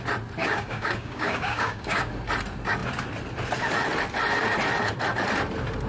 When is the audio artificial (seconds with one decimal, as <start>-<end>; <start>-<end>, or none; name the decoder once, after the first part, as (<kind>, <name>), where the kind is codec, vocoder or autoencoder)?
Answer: 0.4-2.1 (codec, DAC)